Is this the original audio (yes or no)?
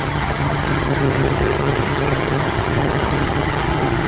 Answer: no